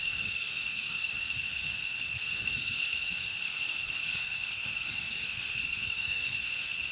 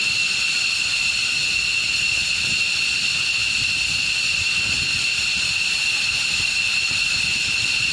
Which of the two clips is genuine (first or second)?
second